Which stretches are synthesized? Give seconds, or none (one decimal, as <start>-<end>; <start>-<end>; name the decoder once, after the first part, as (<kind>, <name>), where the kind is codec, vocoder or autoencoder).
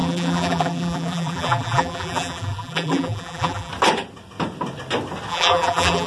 0.0-3.7 (vocoder, BigVGAN v2); 5.3-6.1